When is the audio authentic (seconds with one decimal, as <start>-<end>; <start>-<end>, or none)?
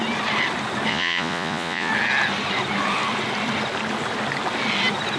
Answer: 0.0-0.9; 1.9-5.2